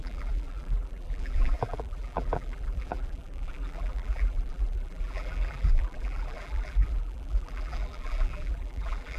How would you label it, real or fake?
fake